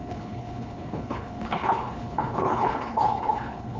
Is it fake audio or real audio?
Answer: fake